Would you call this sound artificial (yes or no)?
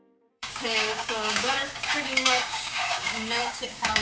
yes